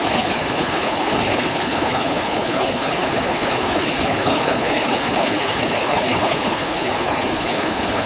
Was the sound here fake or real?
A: fake